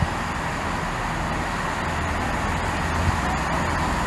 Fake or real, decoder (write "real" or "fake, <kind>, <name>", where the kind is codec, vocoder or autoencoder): real